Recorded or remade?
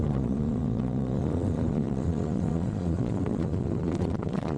remade